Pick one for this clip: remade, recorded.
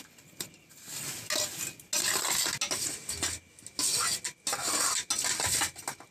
recorded